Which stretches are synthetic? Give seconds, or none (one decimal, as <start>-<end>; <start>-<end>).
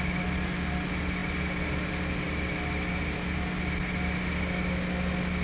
none